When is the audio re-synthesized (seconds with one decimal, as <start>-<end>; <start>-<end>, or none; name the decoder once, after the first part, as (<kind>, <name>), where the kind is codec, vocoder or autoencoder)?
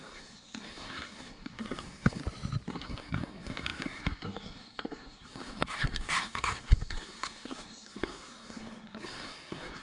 0.0-2.2 (codec, SNAC); 2.7-9.8